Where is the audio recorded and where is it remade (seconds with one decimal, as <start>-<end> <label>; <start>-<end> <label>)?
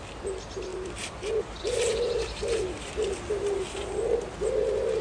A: 0.0-0.7 recorded; 0.7-3.7 remade; 3.7-5.0 recorded